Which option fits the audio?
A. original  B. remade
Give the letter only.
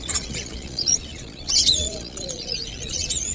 B